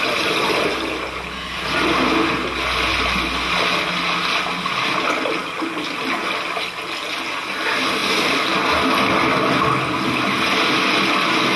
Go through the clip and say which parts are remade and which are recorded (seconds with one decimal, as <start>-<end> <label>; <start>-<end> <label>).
0.0-11.6 recorded